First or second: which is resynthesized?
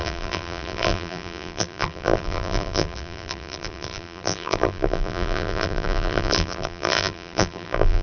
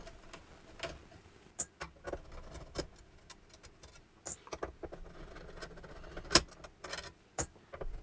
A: first